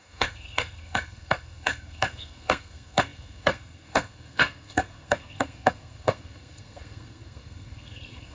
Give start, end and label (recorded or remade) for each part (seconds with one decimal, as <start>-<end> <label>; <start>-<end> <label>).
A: 0.0-8.3 remade